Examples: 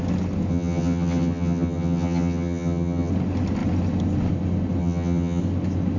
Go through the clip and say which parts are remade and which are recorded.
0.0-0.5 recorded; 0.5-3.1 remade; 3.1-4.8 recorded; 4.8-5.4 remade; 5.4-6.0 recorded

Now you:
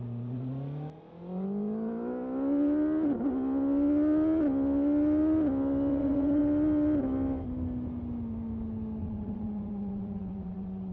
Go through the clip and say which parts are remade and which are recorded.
0.0-5.9 recorded; 5.9-6.4 remade; 6.4-9.0 recorded; 9.0-10.9 remade